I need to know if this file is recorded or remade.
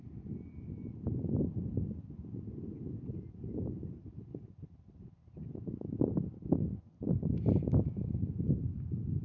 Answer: recorded